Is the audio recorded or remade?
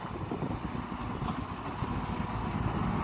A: recorded